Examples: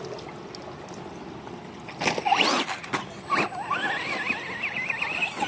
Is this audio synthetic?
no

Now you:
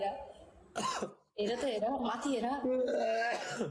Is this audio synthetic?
no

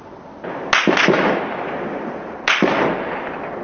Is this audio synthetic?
no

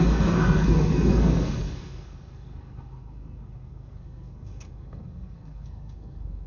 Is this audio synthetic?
yes